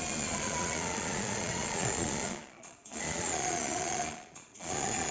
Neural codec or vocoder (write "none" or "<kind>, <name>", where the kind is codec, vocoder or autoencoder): vocoder, Vocos